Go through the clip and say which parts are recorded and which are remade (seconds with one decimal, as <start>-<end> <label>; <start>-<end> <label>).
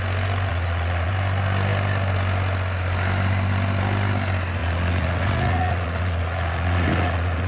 0.0-0.5 recorded; 0.5-1.1 remade; 1.1-4.6 recorded; 4.6-7.5 remade